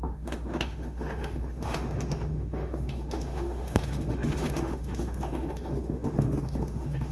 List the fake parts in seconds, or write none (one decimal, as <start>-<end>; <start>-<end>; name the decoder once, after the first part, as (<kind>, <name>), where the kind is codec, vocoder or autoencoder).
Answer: 0.0-7.1 (autoencoder, DAC-VAE)